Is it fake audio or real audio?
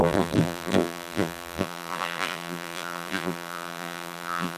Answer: fake